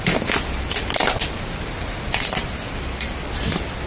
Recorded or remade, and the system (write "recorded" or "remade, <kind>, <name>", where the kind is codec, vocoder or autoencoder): recorded